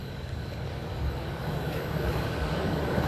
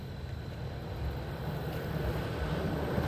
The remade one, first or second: first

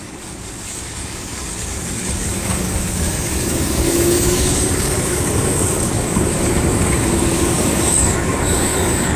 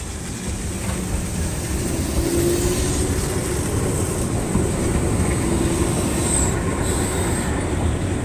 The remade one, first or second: first